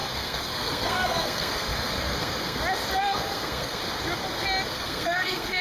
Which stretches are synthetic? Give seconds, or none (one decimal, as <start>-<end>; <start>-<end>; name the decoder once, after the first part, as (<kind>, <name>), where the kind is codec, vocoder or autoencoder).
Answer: 0.0-2.6 (codec, SNAC); 3.0-3.8; 4.7-5.6